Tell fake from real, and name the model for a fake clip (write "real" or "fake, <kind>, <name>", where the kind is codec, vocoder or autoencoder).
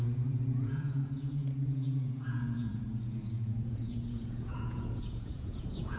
fake, vocoder, Vocos